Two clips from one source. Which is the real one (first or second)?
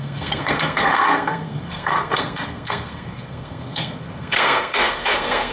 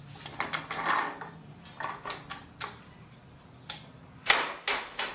second